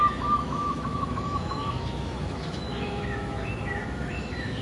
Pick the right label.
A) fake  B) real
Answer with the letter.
A